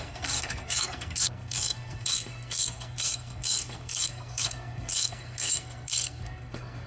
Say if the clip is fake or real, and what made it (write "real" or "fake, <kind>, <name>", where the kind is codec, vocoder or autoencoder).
fake, codec, SNAC